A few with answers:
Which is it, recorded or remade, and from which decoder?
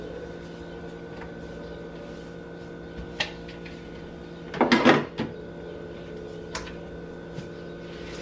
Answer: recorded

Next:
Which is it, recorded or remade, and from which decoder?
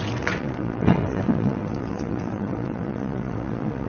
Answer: remade, vocoder, WaveNeXt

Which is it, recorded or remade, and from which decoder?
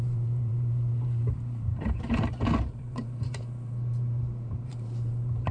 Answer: remade, vocoder, BigVGAN v2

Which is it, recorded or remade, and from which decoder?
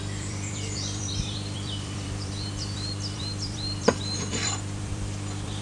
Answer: remade, vocoder, BigVGAN v2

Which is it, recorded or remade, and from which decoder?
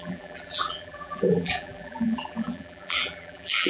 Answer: remade, vocoder, BigVGAN v2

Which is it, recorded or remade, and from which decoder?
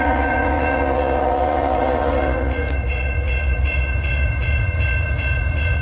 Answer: remade, vocoder, Vocos